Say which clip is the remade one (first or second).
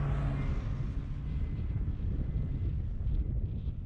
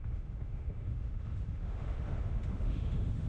second